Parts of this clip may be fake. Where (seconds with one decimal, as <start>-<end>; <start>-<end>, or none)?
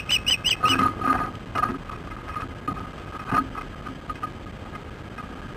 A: none